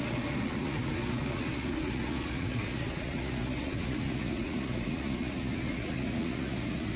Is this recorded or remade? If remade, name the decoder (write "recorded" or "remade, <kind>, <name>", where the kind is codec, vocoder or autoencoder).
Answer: remade, vocoder, Vocos